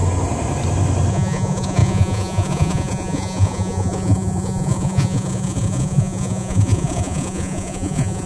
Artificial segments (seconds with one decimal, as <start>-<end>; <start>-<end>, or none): 1.1-8.3